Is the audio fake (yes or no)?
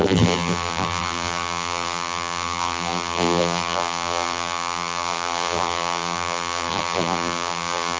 yes